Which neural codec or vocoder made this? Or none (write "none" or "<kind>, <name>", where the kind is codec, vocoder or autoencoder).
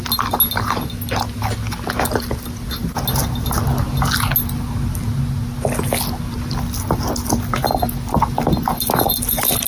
none